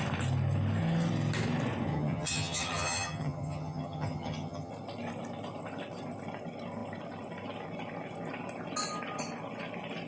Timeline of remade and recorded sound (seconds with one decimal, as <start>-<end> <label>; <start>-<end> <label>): 0.0-1.9 recorded; 1.9-4.7 remade; 4.7-10.1 recorded